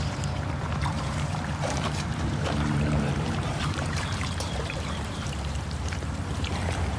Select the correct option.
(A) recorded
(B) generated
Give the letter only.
B